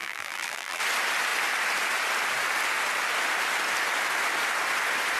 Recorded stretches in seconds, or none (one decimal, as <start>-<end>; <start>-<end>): 0.8-5.2